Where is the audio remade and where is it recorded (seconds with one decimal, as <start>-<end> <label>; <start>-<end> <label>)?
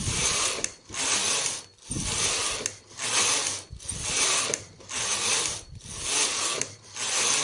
0.0-7.4 recorded